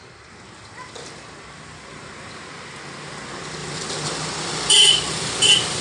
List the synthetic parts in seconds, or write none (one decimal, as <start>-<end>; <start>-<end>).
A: 3.6-5.3